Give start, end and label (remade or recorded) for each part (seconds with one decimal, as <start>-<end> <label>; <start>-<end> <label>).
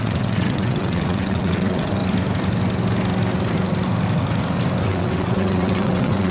0.0-2.0 remade; 2.0-4.8 recorded; 4.8-6.3 remade